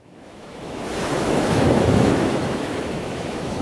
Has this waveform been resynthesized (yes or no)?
yes